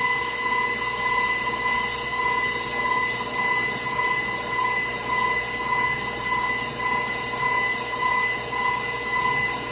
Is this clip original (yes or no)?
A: yes